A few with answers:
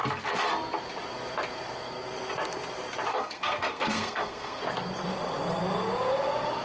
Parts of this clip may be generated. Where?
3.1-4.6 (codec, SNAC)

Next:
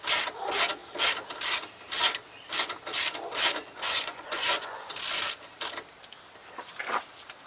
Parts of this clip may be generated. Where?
3.3-4.9 (vocoder, Vocos)

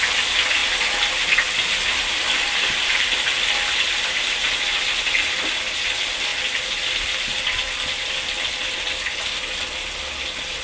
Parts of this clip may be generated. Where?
0.6-4.4 (vocoder, BigVGAN v2); 6.3-8.5

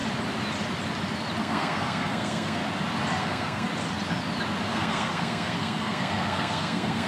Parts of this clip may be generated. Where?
1.4-2.6 (codec, SNAC); 3.2-3.7; 4.6-7.1

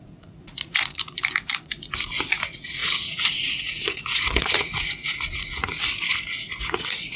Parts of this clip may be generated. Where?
0.0-5.7 (vocoder, Vocos); 6.6-7.2

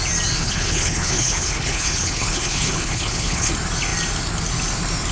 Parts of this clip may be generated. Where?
0.4-3.5 (codec, HILCodec)

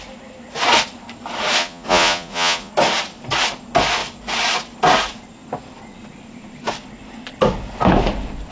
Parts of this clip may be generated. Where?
1.6-2.7 (vocoder, Vocos)